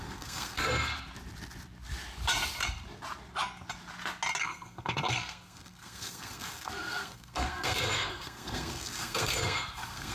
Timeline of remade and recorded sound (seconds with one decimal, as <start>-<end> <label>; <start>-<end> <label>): 0.0-0.9 remade; 0.9-4.4 recorded; 4.4-10.1 remade